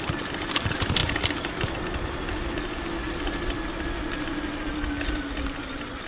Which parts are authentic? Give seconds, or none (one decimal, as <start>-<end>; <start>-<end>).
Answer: 0.0-6.1

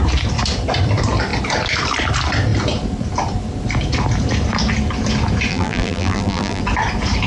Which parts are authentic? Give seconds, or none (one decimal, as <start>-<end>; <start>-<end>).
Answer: 0.0-5.5; 6.6-7.3

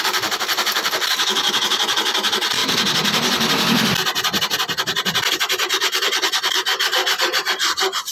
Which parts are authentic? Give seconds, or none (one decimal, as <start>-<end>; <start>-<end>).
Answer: 2.6-5.3

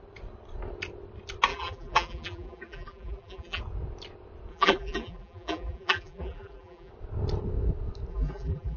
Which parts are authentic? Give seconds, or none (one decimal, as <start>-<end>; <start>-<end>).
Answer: 0.0-1.5; 3.6-4.5; 6.9-8.1

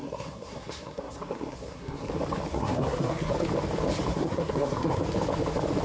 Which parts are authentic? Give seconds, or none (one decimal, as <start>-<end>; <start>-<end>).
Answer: 2.1-2.5; 3.3-4.1; 5.0-5.8

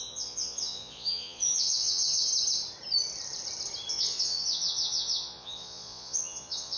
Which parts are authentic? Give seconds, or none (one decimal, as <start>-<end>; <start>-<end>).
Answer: 2.3-3.9

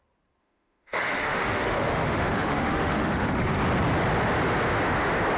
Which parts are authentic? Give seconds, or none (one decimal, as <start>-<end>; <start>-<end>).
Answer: 0.0-0.4; 3.6-5.4